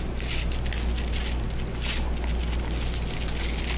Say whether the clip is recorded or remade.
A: recorded